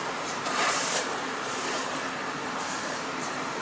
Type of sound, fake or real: fake